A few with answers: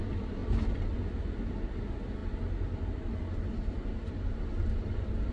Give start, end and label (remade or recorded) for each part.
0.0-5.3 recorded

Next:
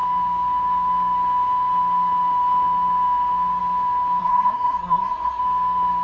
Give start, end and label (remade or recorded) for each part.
0.0-4.2 recorded; 4.2-5.4 remade; 5.4-6.0 recorded

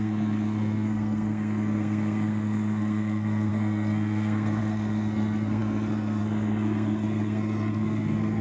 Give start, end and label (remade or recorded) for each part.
0.0-8.4 remade